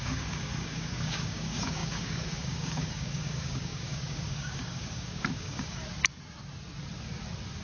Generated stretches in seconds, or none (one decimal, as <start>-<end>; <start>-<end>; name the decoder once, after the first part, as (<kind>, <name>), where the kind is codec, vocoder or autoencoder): 0.0-5.8 (codec, DAC)